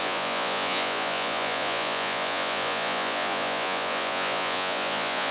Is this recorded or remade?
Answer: remade